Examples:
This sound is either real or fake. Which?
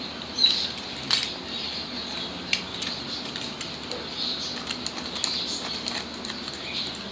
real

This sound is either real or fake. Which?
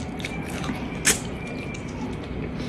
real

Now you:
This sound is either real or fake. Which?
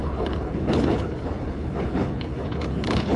fake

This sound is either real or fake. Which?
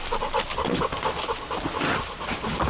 real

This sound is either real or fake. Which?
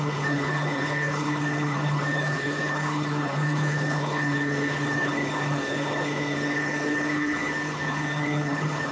fake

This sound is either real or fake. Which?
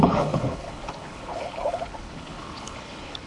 fake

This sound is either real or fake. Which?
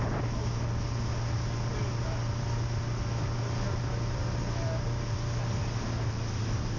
real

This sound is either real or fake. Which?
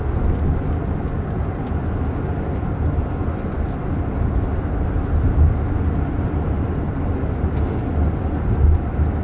real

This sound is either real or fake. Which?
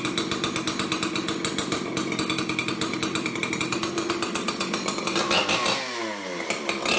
real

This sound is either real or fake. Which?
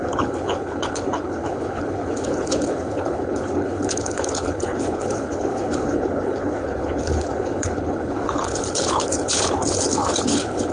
fake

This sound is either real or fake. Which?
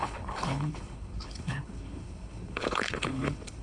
fake